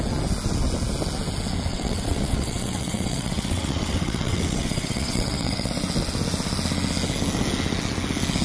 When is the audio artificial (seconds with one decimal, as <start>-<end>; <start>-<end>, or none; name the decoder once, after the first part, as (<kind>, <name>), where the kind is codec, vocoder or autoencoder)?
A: 1.7-5.7 (vocoder, WaveNeXt)